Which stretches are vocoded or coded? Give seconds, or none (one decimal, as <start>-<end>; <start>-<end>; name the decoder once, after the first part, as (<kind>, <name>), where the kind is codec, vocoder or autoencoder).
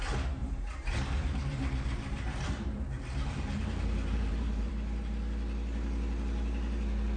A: 0.4-4.7 (vocoder, BigVGAN v2)